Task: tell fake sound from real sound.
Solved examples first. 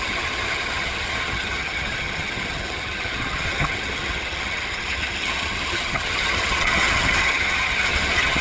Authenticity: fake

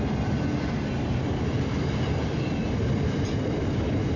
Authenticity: real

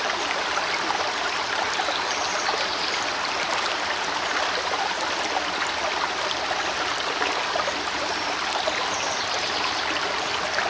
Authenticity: real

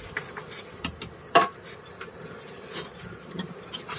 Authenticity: fake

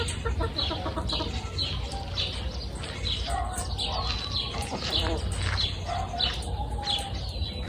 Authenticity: real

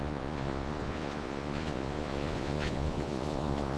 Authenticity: fake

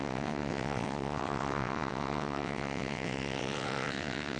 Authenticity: fake